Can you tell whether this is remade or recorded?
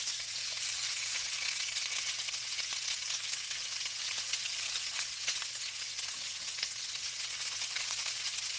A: remade